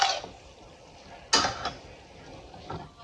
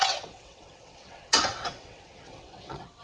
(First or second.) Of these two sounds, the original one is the first